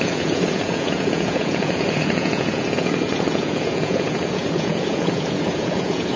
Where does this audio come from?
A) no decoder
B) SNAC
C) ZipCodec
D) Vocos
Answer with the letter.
D